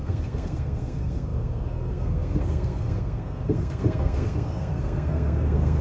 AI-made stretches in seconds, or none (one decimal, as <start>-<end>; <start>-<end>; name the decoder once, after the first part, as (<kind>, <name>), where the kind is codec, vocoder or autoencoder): 0.0-5.8 (codec, SNAC)